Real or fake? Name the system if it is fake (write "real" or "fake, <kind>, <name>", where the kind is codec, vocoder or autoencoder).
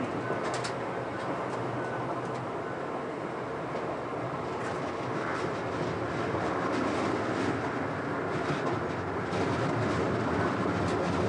real